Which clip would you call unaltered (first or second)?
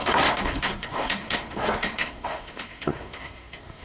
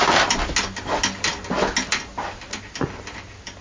second